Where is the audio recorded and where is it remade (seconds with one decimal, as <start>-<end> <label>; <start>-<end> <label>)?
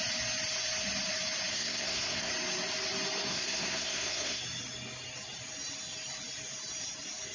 0.0-1.5 recorded; 1.5-2.3 remade; 2.3-3.3 recorded; 3.3-4.4 remade; 4.4-7.3 recorded